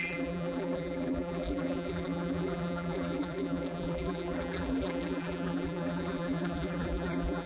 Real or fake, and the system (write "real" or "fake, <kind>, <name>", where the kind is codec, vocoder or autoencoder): fake, vocoder, BigVGAN v2